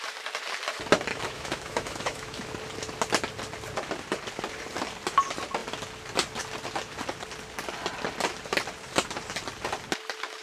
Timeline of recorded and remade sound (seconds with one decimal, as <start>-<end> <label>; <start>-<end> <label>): 0.0-1.1 recorded; 1.1-2.5 remade; 2.5-10.4 recorded